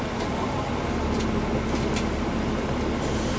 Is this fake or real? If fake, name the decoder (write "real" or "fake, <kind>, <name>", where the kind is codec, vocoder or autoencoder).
real